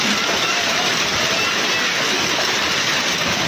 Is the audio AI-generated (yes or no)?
no